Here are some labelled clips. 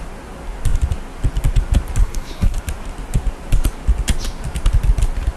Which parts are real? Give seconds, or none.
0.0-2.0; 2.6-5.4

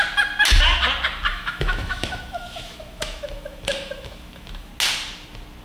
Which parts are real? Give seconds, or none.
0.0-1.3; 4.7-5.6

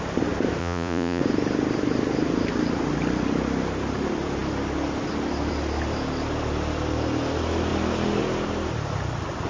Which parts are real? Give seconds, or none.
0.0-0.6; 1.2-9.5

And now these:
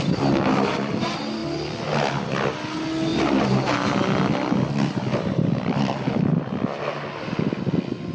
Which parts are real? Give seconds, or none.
0.0-8.1

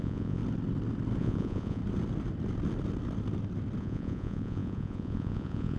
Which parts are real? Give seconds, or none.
0.4-1.2; 1.8-3.8

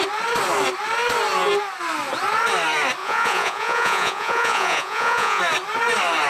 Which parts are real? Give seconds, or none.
0.0-3.0; 5.4-6.3

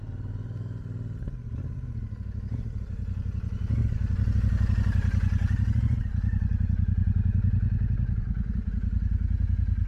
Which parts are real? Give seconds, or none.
0.0-6.3; 7.1-9.9

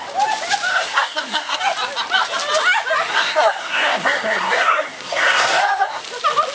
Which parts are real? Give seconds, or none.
0.0-0.7; 1.6-3.1; 6.0-6.5